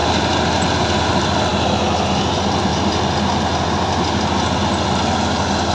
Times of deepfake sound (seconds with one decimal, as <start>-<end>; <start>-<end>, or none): none